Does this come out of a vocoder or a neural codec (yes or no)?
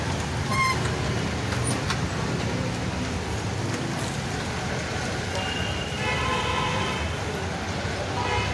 no